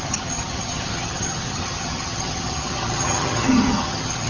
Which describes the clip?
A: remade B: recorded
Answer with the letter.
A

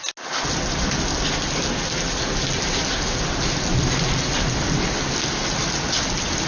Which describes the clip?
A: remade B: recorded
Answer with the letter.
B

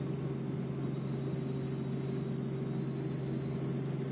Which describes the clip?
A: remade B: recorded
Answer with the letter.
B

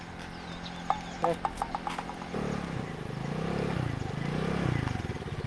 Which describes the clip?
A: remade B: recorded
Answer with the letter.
B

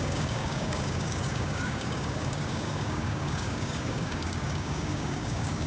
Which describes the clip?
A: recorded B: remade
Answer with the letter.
B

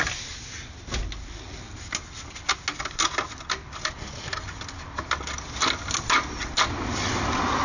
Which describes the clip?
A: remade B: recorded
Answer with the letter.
B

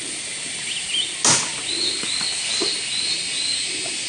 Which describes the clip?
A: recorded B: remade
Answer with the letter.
A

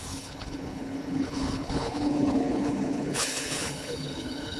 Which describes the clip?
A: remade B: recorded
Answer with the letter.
A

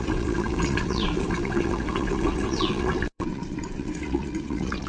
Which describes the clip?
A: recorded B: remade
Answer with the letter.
B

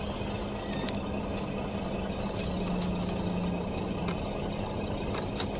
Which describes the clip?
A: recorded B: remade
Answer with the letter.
A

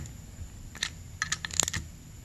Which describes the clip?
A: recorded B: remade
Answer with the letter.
A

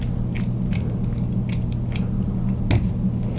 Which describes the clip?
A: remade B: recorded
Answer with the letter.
B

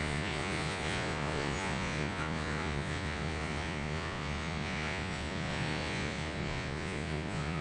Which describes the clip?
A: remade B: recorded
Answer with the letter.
A